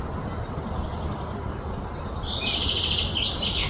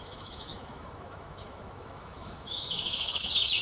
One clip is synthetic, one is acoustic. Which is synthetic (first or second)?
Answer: second